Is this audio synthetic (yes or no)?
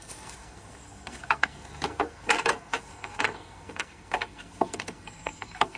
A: yes